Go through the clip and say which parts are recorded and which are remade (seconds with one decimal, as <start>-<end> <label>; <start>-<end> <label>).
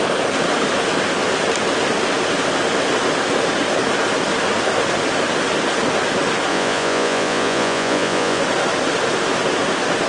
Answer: 0.0-6.5 recorded; 6.5-8.4 remade; 8.4-10.1 recorded